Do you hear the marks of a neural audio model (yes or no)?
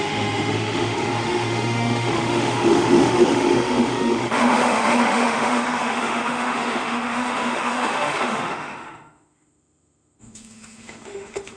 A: yes